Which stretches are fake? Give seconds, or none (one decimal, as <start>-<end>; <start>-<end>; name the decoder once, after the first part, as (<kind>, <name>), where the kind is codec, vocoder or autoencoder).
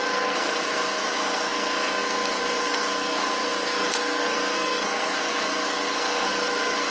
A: 0.0-6.9 (codec, SNAC)